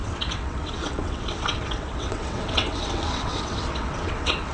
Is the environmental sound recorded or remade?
remade